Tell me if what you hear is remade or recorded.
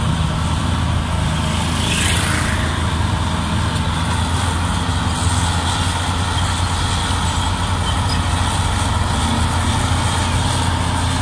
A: recorded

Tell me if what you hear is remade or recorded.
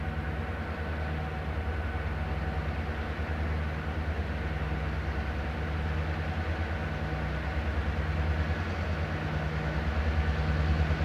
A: recorded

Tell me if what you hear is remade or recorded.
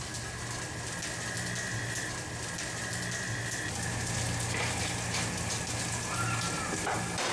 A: recorded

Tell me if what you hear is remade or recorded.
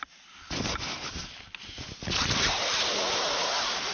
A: recorded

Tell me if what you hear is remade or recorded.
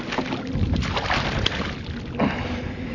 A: recorded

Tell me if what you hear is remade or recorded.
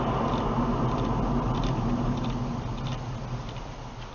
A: recorded